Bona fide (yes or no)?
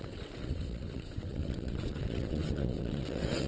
no